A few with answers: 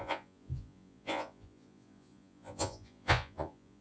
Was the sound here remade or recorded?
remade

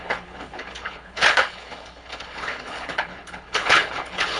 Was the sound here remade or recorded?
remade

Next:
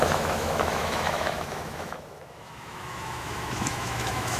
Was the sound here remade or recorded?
remade